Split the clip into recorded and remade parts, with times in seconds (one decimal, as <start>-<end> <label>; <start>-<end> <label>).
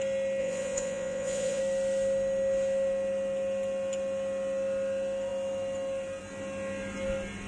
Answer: 0.0-0.4 recorded; 0.4-1.6 remade; 1.6-7.5 recorded